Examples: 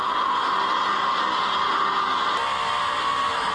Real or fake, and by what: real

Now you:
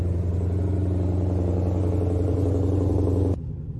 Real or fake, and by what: real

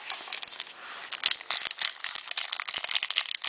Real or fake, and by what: real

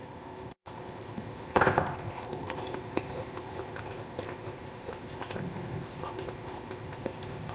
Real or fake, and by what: fake, codec, ZipCodec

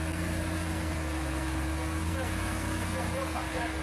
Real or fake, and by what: fake, codec, SNAC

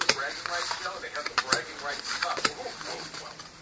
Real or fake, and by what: fake, vocoder, BigVGAN v2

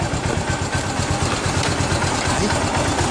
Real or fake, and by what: real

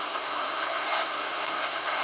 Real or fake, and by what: fake, codec, SNAC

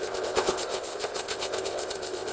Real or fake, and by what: fake, codec, ZipCodec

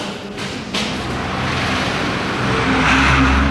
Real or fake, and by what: real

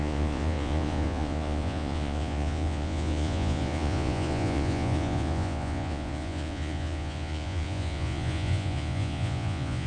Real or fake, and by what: fake, vocoder, Vocos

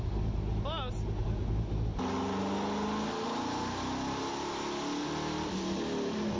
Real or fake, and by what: real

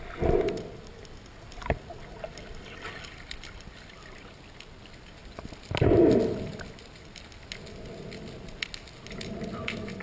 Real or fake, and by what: real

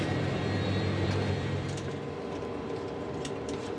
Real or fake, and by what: fake, vocoder, BigVGAN v2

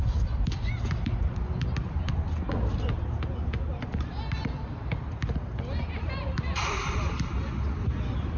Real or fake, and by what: real